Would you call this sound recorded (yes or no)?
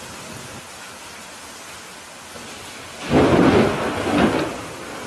yes